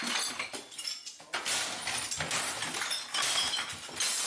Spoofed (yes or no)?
no